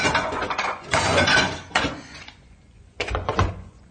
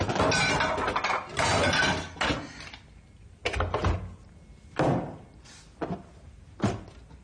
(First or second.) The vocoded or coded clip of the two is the first